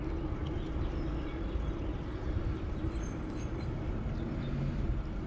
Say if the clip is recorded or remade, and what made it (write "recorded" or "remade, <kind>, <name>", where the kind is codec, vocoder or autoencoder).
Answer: recorded